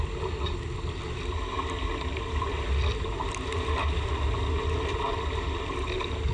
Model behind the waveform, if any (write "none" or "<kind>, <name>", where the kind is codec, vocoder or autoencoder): none